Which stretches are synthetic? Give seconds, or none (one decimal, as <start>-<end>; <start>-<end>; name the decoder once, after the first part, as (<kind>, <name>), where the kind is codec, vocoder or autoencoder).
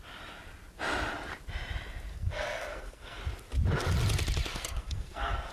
2.1-3.2 (codec, SNAC); 4.5-5.5